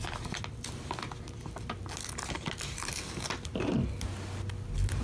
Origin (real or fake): real